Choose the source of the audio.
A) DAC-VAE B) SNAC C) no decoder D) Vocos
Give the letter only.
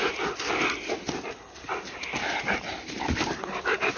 C